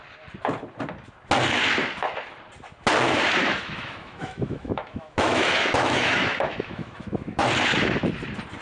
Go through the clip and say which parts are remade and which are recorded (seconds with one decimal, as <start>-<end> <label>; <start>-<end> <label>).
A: 0.0-3.4 recorded; 3.4-7.5 remade; 7.5-8.6 recorded